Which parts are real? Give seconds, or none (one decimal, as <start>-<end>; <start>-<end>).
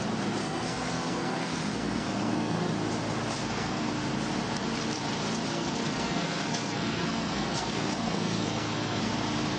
0.0-0.4; 2.7-3.4; 3.9-5.5; 9.1-9.6